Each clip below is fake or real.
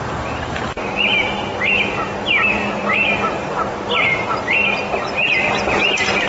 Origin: fake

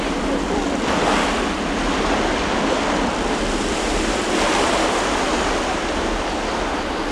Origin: real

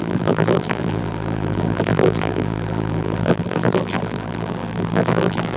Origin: fake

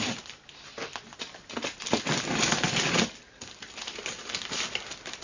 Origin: real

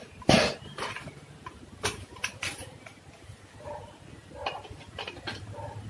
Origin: real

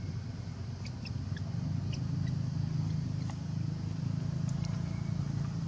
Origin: real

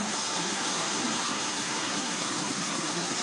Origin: fake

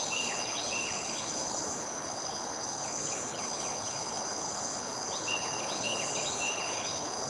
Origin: fake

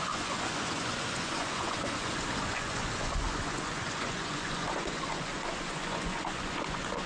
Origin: fake